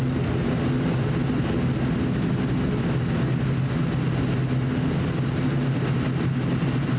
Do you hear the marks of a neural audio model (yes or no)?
no